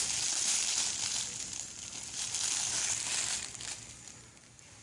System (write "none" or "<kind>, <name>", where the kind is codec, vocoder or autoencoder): none